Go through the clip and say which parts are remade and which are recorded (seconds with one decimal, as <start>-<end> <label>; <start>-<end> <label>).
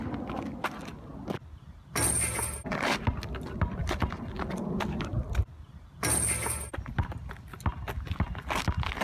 0.0-9.0 recorded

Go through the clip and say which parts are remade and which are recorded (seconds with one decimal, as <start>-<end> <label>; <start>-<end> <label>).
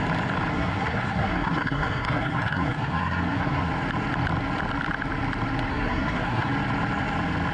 0.0-0.5 recorded; 0.5-3.7 remade; 3.7-5.7 recorded; 5.7-6.5 remade; 6.5-7.5 recorded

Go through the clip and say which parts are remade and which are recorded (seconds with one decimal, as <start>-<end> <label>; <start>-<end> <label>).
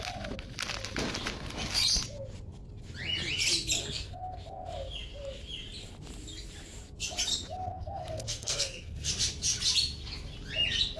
0.0-3.8 recorded; 3.8-4.4 remade; 4.4-7.7 recorded; 7.7-9.1 remade; 9.1-11.0 recorded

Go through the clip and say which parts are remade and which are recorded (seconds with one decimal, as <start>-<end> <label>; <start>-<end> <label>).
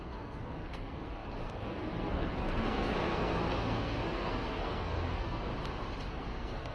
0.0-5.5 remade; 5.5-6.1 recorded; 6.1-6.7 remade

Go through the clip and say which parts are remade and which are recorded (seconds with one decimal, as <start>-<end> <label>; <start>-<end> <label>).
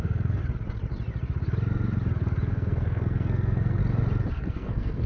0.0-0.4 remade; 0.4-2.5 recorded; 2.5-3.8 remade; 3.8-4.3 recorded; 4.3-5.1 remade